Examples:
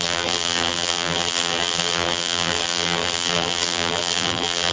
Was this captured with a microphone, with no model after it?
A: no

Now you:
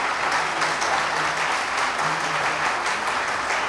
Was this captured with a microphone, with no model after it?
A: yes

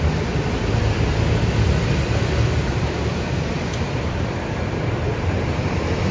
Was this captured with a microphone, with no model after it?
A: no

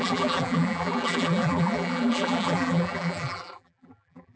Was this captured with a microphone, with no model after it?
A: no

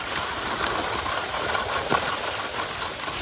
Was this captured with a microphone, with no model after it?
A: yes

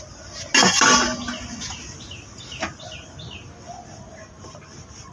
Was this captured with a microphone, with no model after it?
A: yes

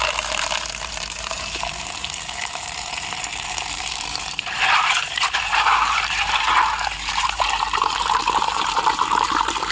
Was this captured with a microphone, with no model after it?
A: no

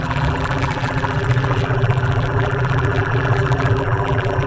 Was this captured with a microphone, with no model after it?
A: no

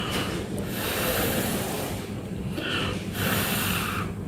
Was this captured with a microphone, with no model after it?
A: no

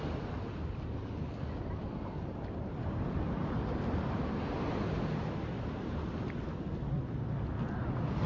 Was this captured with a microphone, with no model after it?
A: yes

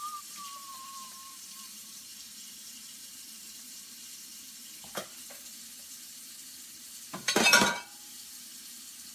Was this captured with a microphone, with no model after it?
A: no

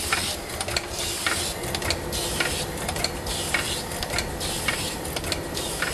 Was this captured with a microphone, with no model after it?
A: yes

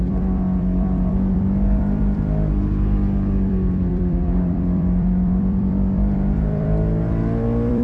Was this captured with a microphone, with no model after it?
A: no